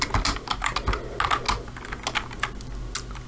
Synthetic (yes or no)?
no